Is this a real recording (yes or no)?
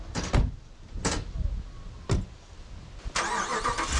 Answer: yes